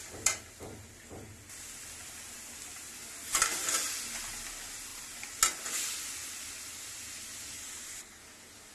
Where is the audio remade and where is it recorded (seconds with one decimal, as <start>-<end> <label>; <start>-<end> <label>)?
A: 0.0-8.7 recorded